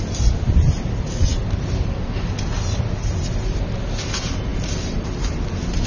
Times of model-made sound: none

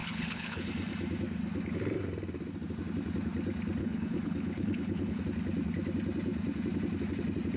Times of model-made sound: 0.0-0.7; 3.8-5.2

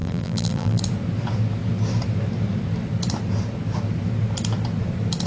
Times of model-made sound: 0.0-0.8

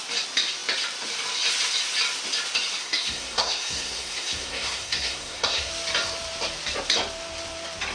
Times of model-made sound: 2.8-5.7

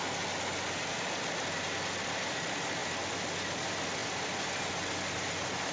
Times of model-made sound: none

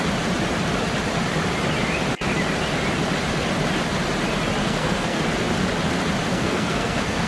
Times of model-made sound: 4.6-5.2; 6.3-7.3

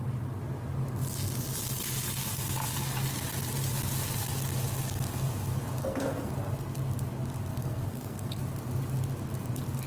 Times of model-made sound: 5.8-6.3; 7.5-8.4